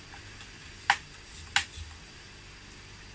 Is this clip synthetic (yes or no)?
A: no